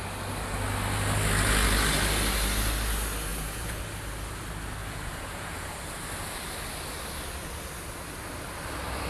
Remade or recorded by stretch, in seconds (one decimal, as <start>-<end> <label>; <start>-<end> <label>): 0.0-3.3 recorded; 3.3-3.8 remade; 3.8-4.8 recorded; 4.8-5.7 remade; 5.7-9.1 recorded

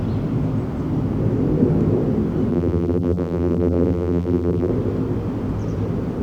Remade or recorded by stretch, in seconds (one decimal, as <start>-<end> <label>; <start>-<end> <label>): 0.0-2.5 recorded; 2.5-4.7 remade; 4.7-6.2 recorded

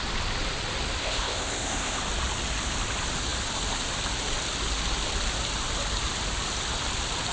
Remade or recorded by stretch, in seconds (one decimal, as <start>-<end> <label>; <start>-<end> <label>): 0.0-1.0 recorded; 1.0-2.0 remade; 2.0-7.3 recorded

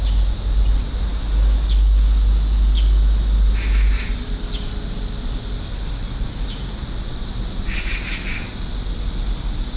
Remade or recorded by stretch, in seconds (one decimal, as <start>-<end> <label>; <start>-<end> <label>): 0.0-9.8 recorded

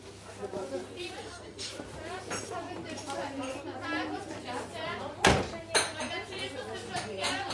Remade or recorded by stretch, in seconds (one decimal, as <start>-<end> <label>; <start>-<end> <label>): 0.0-1.2 recorded; 1.2-1.7 remade; 1.7-7.5 recorded

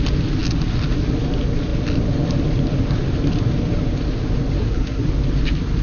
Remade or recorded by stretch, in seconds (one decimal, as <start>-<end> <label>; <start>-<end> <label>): 0.0-4.6 recorded; 4.6-5.1 remade; 5.1-5.8 recorded

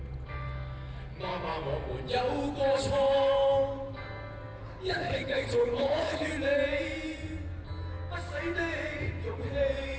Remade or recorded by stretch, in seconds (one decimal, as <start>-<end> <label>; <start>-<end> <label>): 0.0-4.6 recorded; 4.6-6.3 remade; 6.3-10.0 recorded

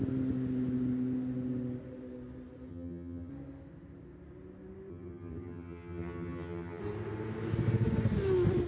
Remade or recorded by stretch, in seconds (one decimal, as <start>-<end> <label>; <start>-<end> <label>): 0.0-2.7 recorded; 2.7-3.3 remade; 3.3-4.9 recorded; 4.9-6.8 remade; 6.8-8.7 recorded